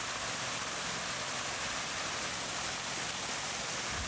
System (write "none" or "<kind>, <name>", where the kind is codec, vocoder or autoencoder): none